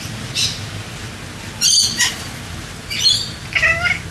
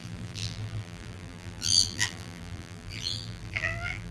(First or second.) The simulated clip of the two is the second